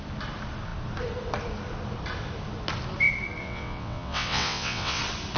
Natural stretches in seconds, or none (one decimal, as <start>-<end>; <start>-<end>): 0.0-3.4; 5.0-5.4